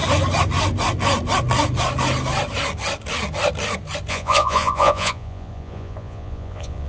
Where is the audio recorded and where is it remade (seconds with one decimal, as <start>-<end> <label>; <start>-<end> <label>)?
0.0-4.1 recorded; 4.1-6.9 remade